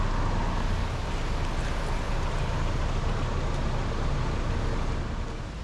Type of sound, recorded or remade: recorded